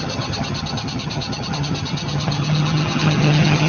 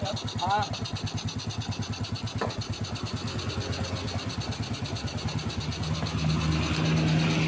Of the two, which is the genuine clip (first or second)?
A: second